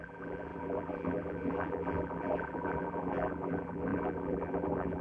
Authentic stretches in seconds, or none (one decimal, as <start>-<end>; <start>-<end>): none